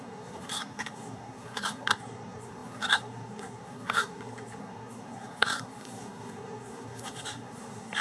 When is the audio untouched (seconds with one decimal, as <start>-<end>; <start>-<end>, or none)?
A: none